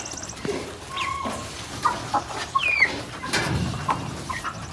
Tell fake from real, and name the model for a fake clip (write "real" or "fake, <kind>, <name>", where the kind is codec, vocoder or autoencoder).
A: real